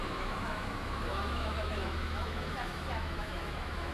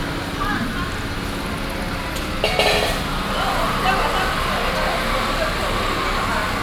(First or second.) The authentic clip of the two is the second